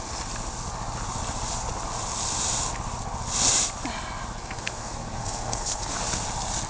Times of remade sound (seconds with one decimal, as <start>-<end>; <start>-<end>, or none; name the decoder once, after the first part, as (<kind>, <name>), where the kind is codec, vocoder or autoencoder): 4.6-6.0 (codec, SNAC)